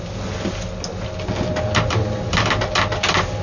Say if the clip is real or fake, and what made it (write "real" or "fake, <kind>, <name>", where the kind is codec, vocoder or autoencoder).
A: real